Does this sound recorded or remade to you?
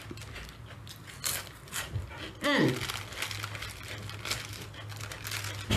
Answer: recorded